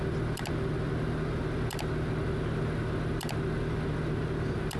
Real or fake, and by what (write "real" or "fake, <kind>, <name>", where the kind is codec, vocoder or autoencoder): real